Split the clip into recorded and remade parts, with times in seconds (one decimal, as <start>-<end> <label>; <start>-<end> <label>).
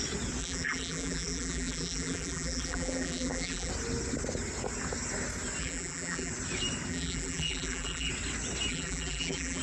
0.0-0.4 recorded; 0.4-3.7 remade; 3.7-5.6 recorded; 5.6-6.3 remade; 6.3-6.9 recorded; 6.9-8.1 remade; 8.1-8.7 recorded; 8.7-9.6 remade